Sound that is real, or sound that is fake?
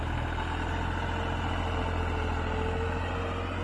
real